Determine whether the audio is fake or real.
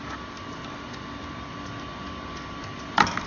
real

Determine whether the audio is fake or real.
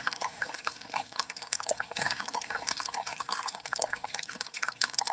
fake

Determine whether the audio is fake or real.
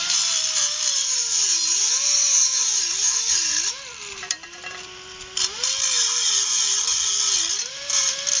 fake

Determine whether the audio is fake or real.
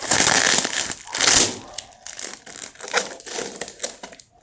real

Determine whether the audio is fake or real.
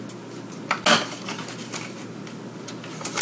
real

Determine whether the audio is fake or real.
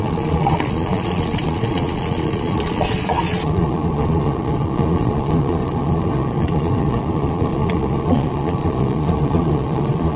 fake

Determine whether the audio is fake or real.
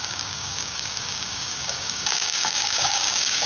fake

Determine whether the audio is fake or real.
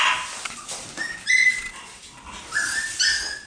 fake